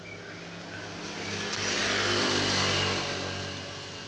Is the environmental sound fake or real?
real